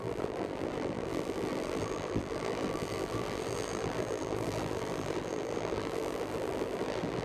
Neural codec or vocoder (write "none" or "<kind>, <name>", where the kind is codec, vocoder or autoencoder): vocoder, BigVGAN v2